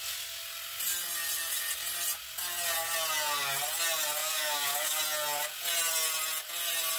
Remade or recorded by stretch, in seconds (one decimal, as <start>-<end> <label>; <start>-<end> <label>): 0.0-4.2 recorded; 4.2-5.0 remade; 5.0-7.0 recorded